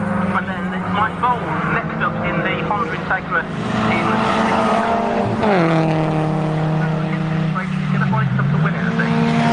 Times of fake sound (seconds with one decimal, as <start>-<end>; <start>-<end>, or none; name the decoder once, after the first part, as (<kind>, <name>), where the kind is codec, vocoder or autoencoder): none